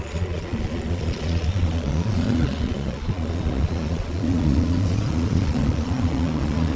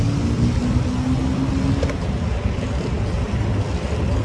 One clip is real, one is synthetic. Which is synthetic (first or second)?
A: first